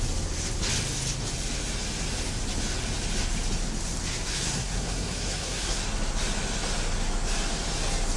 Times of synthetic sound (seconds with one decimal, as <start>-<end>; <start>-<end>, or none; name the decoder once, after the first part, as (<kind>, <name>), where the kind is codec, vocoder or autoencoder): 4.1-5.8 (codec, SNAC)